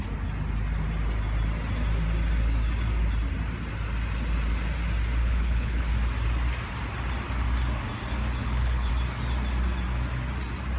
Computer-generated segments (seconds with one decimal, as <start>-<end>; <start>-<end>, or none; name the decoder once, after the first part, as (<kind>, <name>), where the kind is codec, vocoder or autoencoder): 5.2-5.9 (codec, HILCodec); 8.4-8.9